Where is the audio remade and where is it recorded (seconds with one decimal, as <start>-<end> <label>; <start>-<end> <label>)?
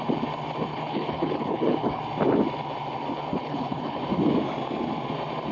0.0-0.7 recorded; 0.7-2.0 remade; 2.0-3.3 recorded; 3.3-4.0 remade; 4.0-5.5 recorded